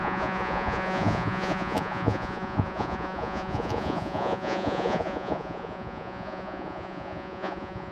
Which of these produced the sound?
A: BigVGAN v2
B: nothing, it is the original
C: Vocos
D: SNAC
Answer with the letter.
C